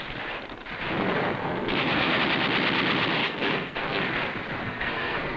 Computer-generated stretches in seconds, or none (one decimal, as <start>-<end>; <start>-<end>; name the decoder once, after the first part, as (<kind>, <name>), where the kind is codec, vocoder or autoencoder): 1.4-2.2 (codec, SNAC); 3.2-4.0; 4.6-5.4